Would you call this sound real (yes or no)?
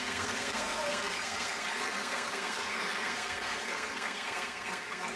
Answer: no